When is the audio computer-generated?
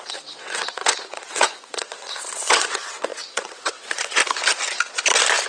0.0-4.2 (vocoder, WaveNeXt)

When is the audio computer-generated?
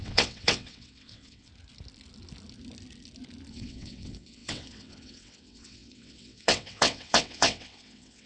0.0-1.5 (vocoder, WaveNeXt); 3.5-8.3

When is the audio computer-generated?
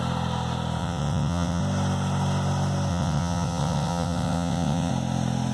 0.8-1.6 (vocoder, WaveNeXt); 2.9-4.9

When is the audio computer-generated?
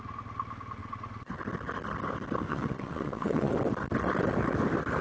0.8-1.4 (vocoder, WaveNeXt); 2.5-3.5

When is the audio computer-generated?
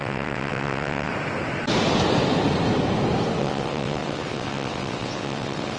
0.0-1.1 (vocoder, WaveNeXt); 3.4-5.8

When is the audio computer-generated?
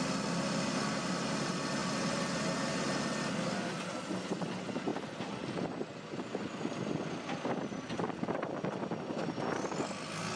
none